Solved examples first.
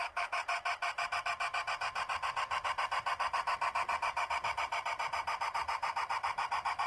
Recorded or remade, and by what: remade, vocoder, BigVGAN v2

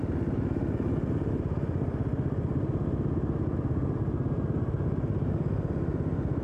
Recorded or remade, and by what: recorded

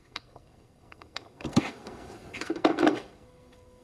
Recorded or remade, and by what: remade, codec, SNAC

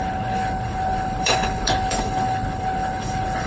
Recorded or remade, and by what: remade, codec, HILCodec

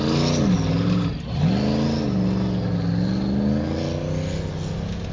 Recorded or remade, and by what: recorded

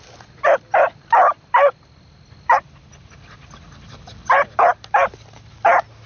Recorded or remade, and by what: recorded